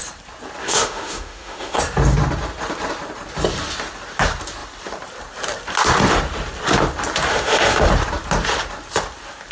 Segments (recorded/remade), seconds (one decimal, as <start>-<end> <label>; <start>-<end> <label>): 0.0-0.6 recorded; 0.6-1.8 remade; 1.8-7.3 recorded; 7.3-7.9 remade; 7.9-9.5 recorded